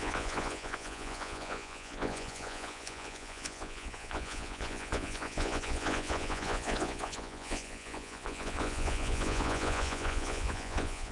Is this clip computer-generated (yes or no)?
yes